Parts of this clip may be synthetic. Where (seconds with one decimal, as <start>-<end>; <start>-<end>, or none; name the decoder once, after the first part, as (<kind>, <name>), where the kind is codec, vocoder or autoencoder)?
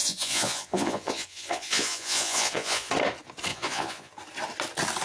0.0-2.9 (vocoder, Vocos); 3.5-4.1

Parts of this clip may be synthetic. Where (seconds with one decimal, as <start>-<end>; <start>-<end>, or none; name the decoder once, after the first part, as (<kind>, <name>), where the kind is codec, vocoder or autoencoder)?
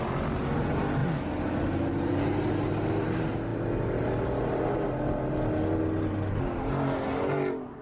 none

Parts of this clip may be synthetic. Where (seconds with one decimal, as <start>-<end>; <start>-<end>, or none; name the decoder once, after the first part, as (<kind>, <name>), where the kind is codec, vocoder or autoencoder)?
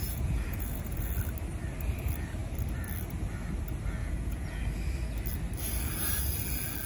0.0-1.1 (vocoder, Vocos); 4.0-4.6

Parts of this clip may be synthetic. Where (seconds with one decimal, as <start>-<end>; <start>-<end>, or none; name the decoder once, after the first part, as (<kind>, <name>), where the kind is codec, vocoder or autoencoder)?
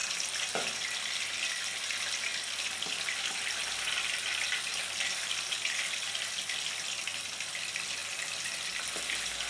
none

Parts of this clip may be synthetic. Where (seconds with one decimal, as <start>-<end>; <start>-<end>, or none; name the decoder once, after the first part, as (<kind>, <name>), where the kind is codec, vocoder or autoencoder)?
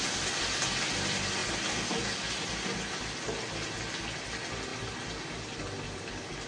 none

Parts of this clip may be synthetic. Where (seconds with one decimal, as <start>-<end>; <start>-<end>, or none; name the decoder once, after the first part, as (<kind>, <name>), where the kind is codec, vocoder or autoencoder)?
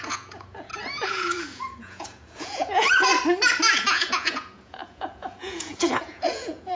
0.0-3.1 (vocoder, Vocos); 3.8-6.8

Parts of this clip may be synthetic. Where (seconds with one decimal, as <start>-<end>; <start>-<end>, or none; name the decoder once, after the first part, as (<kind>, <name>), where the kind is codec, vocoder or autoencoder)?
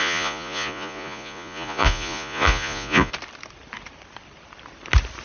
0.0-3.1 (vocoder, Vocos)